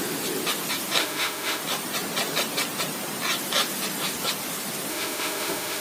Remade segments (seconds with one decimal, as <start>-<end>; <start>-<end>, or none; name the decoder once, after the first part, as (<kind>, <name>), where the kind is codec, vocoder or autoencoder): 1.0-1.6 (autoencoder, DAC-VAE); 4.9-5.8